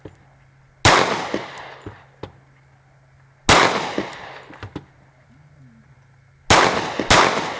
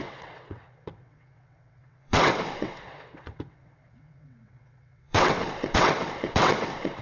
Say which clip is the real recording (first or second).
first